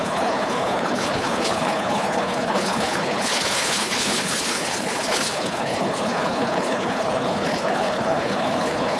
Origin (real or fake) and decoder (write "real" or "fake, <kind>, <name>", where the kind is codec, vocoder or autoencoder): fake, codec, HILCodec